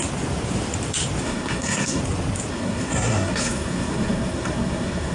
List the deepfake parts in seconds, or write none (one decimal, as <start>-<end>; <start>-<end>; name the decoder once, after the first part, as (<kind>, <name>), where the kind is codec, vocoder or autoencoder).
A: 1.2-2.0 (codec, SNAC); 2.5-5.1